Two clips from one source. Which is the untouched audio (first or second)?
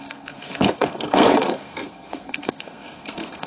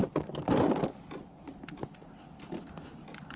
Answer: second